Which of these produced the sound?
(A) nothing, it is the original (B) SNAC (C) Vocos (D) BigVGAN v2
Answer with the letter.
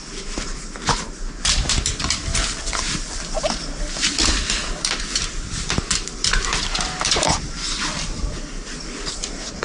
D